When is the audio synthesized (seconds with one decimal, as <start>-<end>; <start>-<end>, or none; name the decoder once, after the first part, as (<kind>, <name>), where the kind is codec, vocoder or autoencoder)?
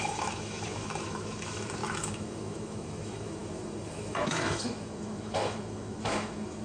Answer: 0.0-6.6 (autoencoder, DAC-VAE)